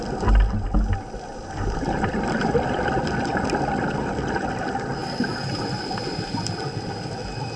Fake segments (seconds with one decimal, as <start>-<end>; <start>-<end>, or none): none